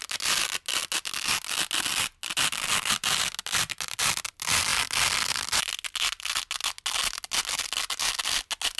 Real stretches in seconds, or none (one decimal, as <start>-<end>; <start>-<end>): 0.0-8.8